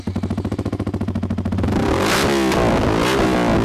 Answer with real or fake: real